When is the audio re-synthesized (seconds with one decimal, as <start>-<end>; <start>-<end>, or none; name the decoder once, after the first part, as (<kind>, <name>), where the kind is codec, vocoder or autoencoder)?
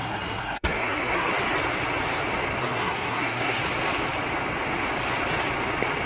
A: 0.0-1.3 (codec, SNAC); 2.6-3.6